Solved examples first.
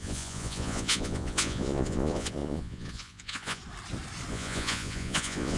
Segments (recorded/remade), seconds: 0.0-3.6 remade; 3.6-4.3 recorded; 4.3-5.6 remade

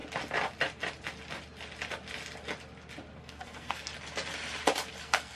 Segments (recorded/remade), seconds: 0.0-3.2 recorded; 3.2-3.9 remade; 3.9-5.0 recorded; 5.0-5.4 remade

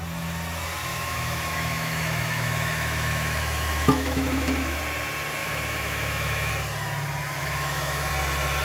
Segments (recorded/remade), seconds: 0.0-0.9 recorded; 0.9-4.8 remade; 4.8-5.4 recorded; 5.4-6.5 remade; 6.5-7.4 recorded; 7.4-8.1 remade; 8.1-8.6 recorded